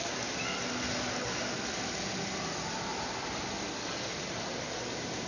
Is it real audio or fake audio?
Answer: real